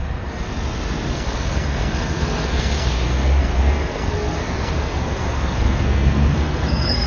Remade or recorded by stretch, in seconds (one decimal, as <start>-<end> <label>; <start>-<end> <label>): 0.0-0.5 remade; 0.5-1.1 recorded; 1.1-7.1 remade